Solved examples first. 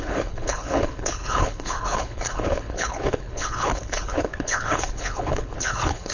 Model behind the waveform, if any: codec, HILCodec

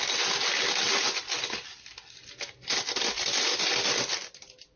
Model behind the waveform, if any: none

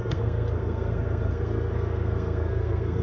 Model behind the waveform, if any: codec, SNAC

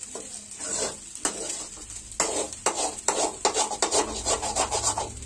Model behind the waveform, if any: none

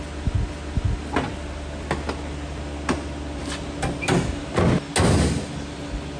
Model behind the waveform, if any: none